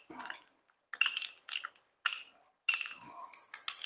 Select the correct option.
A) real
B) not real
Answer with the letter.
A